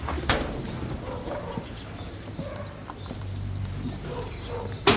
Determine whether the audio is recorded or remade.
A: remade